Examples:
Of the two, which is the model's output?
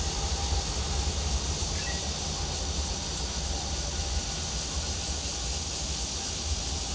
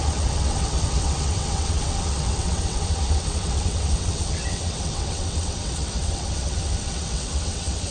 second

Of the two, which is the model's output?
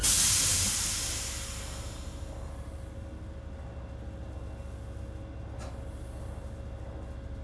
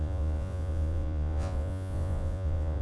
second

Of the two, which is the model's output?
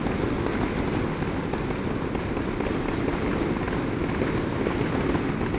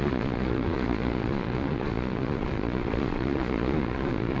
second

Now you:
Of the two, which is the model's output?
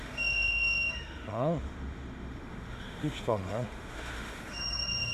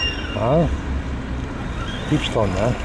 first